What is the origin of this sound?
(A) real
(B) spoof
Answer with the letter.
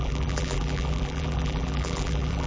B